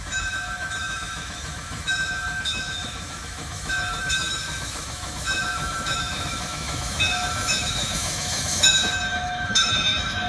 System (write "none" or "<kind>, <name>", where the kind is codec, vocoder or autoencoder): autoencoder, DAC-VAE